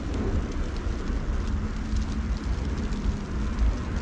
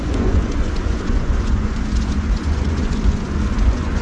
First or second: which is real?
first